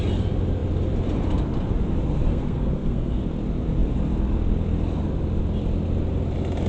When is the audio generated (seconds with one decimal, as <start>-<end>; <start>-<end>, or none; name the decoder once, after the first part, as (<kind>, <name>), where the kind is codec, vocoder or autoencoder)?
2.3-3.2 (codec, SNAC)